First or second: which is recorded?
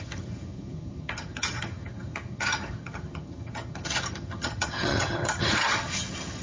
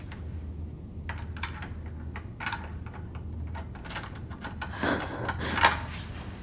second